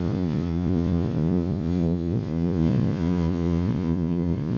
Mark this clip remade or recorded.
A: remade